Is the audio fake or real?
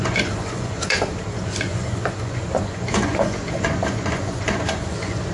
fake